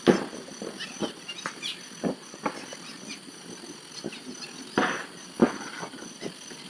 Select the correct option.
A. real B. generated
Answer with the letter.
A